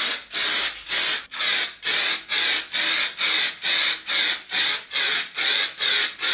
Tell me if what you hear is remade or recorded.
recorded